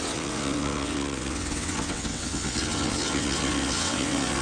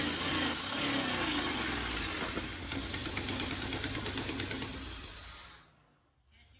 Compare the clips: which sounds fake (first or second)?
first